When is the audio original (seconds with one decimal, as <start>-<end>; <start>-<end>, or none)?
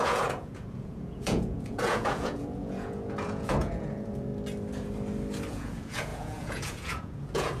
4.3-5.5